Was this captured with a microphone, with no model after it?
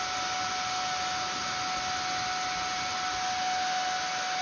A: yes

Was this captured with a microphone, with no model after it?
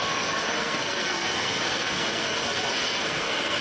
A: no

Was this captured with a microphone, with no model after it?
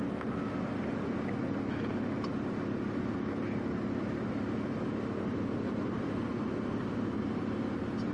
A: yes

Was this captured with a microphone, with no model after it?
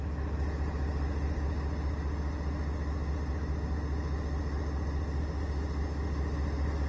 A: yes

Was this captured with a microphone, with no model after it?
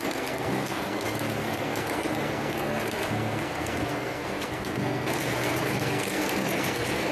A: no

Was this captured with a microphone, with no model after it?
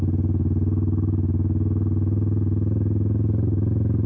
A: yes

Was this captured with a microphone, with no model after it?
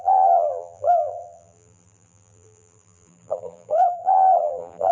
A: no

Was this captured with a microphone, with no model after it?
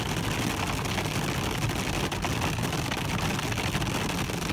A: yes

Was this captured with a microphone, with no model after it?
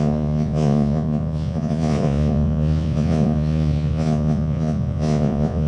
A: no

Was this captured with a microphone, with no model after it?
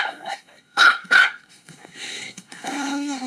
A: no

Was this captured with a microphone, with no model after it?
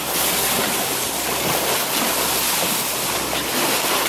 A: yes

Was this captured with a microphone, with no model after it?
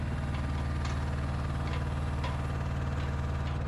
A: yes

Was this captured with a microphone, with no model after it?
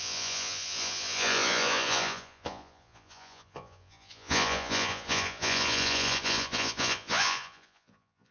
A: no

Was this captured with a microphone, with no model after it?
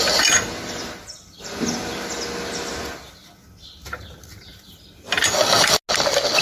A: yes